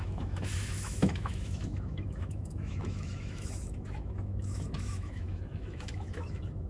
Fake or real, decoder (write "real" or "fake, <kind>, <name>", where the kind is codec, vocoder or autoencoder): fake, autoencoder, DAC-VAE